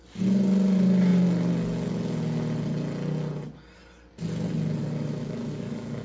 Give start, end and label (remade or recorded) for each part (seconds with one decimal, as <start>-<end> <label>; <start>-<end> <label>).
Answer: 0.0-4.8 recorded; 4.8-6.0 remade